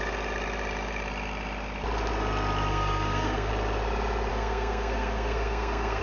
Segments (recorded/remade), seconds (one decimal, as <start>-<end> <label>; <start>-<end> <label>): 0.0-2.7 recorded; 2.7-3.5 remade; 3.5-4.3 recorded; 4.3-6.0 remade